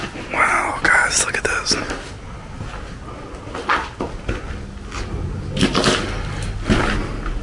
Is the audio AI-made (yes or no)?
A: no